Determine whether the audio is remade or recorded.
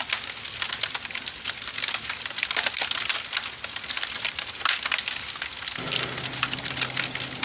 recorded